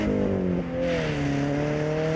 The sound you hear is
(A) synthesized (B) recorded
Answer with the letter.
B